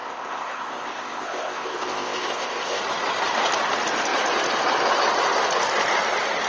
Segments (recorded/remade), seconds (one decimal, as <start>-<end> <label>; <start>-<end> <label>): 0.0-2.8 remade; 2.8-6.5 recorded